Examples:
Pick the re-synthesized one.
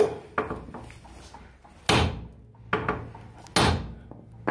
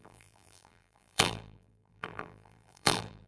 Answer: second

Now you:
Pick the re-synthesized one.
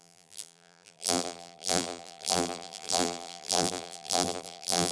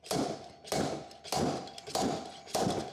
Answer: first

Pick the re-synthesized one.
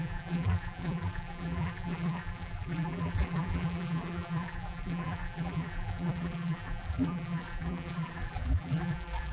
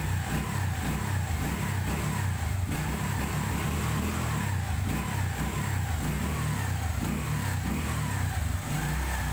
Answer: first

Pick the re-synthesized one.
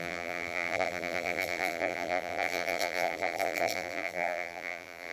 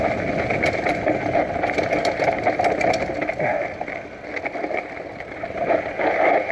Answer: first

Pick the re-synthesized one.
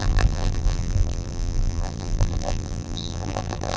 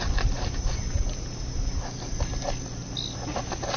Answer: first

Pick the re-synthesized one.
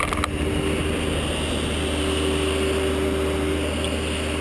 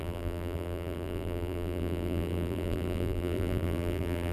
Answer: second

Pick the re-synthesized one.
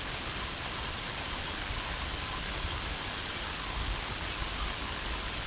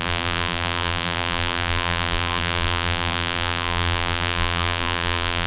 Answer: second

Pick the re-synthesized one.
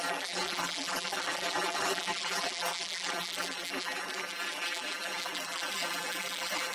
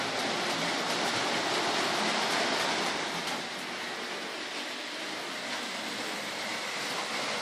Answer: first